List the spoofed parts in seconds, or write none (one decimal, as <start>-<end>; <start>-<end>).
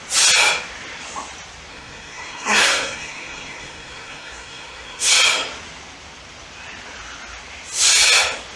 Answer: 1.7-5.1